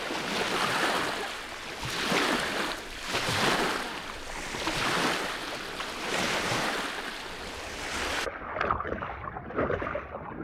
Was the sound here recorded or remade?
recorded